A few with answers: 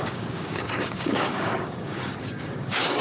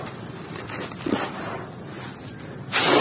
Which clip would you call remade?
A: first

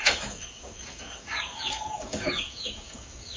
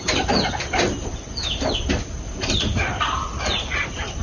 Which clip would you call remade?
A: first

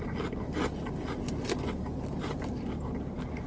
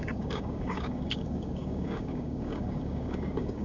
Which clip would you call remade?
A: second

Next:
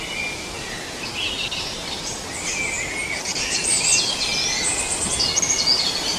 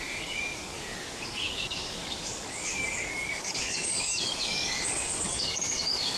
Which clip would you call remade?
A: second